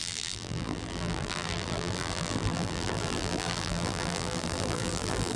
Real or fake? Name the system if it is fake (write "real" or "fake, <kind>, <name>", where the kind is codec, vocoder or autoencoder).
fake, vocoder, BigVGAN v2